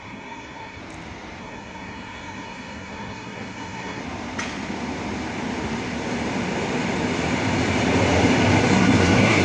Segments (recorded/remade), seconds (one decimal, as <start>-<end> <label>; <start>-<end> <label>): 0.0-0.8 remade; 0.8-1.4 recorded; 1.4-4.0 remade; 4.0-8.6 recorded; 8.6-9.4 remade